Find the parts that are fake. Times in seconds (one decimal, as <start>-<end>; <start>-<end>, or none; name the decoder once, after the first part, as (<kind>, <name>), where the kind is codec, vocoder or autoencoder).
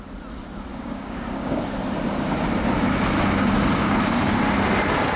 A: 0.7-1.6 (codec, DAC)